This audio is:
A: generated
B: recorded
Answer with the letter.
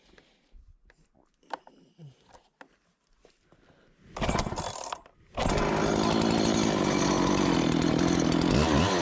B